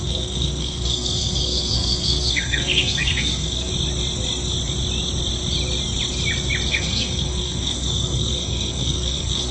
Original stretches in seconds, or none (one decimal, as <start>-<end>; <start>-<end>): 3.7-6.7